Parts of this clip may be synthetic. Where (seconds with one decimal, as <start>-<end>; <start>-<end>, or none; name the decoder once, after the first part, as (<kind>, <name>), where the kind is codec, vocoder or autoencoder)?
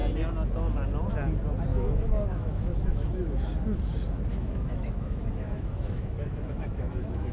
1.7-3.1 (autoencoder, DAC-VAE); 4.3-7.3